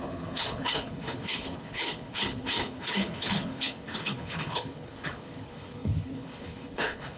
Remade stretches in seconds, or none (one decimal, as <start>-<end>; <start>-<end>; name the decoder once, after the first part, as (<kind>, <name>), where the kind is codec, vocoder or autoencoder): 0.0-7.2 (codec, HILCodec)